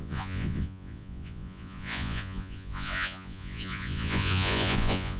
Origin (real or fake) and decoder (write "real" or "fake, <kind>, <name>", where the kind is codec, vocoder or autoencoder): fake, vocoder, Vocos